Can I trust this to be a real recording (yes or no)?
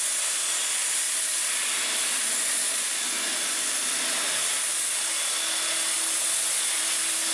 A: yes